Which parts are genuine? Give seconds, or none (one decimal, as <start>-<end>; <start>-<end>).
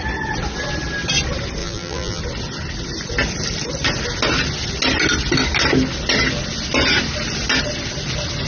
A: 0.0-1.6; 2.2-8.5